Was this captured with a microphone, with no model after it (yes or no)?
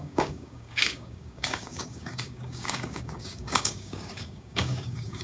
no